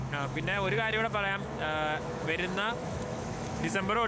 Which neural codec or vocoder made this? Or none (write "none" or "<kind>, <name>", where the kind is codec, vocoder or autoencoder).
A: autoencoder, DAC-VAE